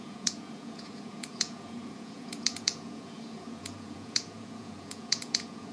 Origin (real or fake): fake